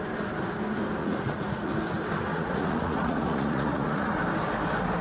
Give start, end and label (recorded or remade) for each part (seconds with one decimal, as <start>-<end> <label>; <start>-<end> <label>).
0.0-1.0 recorded; 1.0-1.7 remade; 1.7-2.3 recorded; 2.3-4.2 remade; 4.2-5.0 recorded